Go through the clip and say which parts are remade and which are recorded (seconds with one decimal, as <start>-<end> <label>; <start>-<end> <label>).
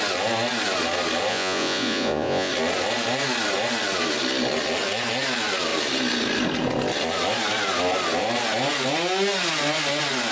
0.0-1.3 recorded; 1.3-2.5 remade; 2.5-10.3 recorded